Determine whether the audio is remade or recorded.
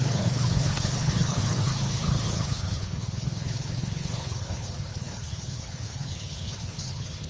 remade